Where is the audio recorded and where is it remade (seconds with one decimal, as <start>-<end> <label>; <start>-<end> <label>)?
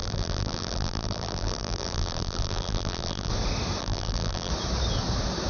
0.0-3.3 remade; 3.3-3.8 recorded; 3.8-4.5 remade; 4.5-5.5 recorded